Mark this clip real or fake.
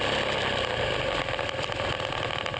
real